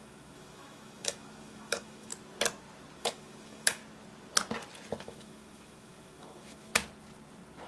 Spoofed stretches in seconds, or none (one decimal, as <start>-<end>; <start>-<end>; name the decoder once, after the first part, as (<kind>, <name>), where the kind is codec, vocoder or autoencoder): 0.0-2.1 (autoencoder, DAC-VAE); 3.0-3.8; 5.0-6.7

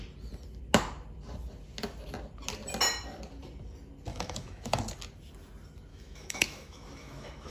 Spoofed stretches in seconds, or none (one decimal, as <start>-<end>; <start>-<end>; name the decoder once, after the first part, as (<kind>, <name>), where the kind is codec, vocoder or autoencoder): 4.1-4.8 (autoencoder, DAC-VAE); 5.9-7.5

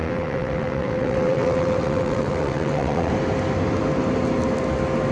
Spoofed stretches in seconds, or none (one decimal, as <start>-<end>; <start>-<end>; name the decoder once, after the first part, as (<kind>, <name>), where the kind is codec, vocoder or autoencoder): 0.0-3.1 (vocoder, WaveNeXt)